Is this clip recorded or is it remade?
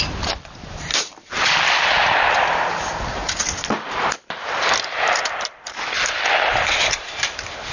remade